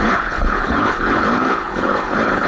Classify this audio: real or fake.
fake